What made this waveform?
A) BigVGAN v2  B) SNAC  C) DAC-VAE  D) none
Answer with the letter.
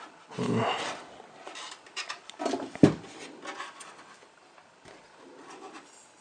D